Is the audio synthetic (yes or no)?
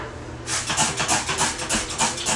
no